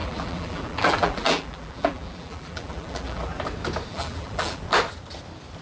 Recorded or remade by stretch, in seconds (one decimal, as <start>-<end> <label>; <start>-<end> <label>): 0.0-3.4 remade; 3.4-3.9 recorded; 3.9-4.6 remade; 4.6-5.6 recorded